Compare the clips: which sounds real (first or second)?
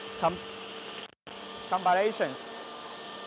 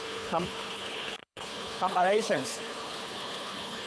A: first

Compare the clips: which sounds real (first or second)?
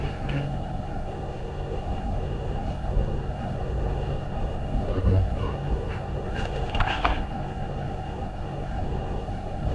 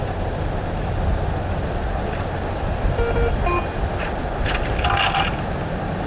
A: second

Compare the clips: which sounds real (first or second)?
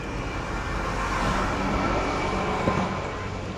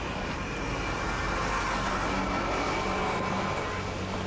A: second